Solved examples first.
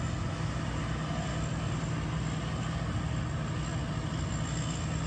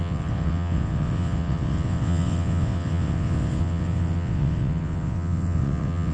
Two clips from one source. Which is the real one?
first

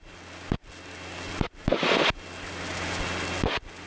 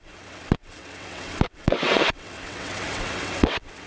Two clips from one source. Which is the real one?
first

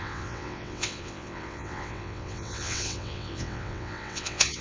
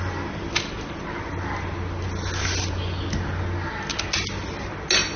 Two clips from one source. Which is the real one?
second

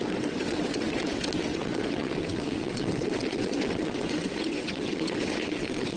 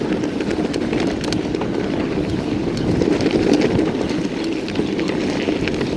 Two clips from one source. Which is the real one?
second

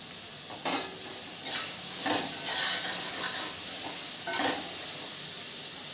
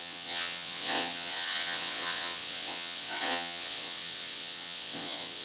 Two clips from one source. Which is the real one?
first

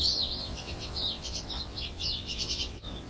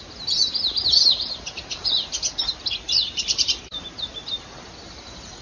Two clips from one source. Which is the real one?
second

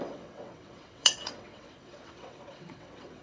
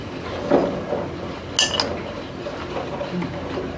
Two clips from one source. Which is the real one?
second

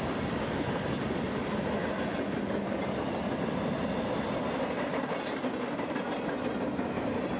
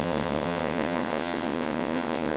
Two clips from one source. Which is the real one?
first